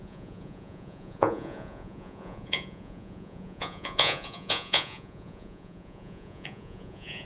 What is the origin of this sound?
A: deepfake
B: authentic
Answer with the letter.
A